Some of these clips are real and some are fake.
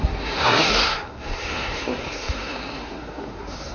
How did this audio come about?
fake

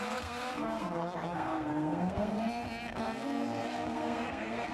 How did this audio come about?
fake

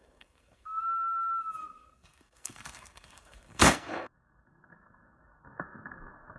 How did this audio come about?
fake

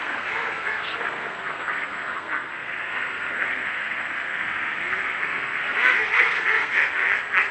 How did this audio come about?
fake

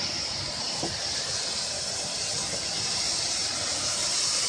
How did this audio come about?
real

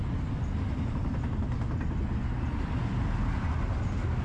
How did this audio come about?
real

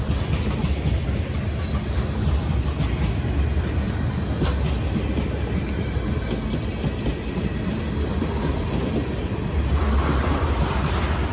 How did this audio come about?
real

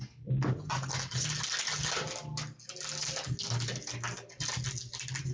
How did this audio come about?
real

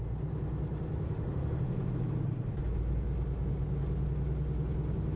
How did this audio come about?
real